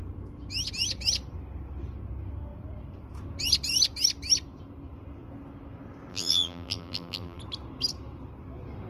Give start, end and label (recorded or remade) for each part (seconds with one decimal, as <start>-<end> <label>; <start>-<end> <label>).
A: 0.0-6.1 recorded; 6.1-7.4 remade; 7.4-8.9 recorded